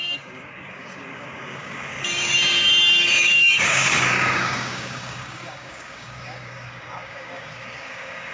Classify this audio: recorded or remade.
remade